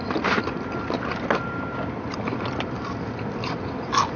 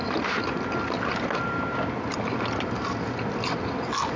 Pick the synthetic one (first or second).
first